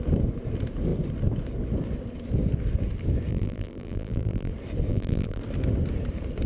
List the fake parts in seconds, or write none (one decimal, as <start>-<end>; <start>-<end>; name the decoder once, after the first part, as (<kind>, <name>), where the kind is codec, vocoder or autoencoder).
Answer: 3.3-4.5 (vocoder, BigVGAN v2); 4.9-5.4